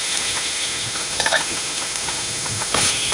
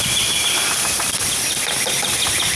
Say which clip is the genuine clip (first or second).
second